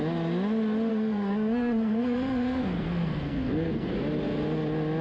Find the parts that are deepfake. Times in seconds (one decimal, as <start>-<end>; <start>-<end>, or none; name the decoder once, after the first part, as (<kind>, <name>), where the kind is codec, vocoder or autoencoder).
0.9-3.9 (codec, SNAC)